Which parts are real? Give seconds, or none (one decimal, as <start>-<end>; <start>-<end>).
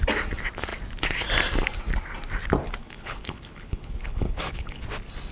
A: 0.0-2.8; 4.8-5.3